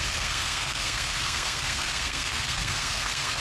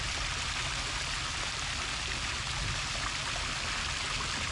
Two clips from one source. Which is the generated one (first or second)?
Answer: first